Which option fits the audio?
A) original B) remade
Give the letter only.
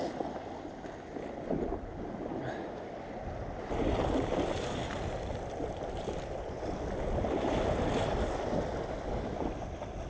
A